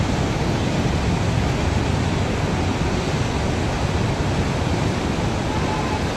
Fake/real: real